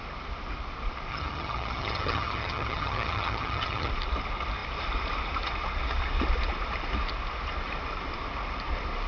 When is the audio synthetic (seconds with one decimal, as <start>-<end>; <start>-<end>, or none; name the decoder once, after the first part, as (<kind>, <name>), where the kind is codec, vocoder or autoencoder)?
1.1-3.9 (vocoder, HiFi-GAN)